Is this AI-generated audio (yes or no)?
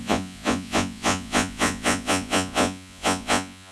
yes